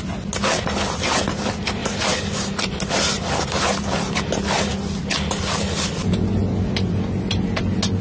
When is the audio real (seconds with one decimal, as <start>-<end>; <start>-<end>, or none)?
0.0-1.8; 4.2-4.7; 5.4-6.4; 6.9-8.0